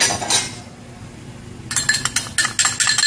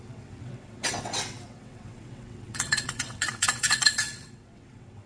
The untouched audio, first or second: first